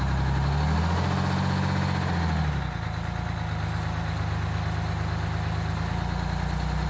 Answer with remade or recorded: recorded